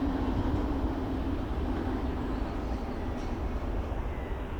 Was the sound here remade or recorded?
recorded